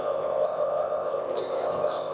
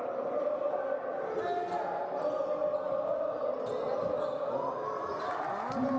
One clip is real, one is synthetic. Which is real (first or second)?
second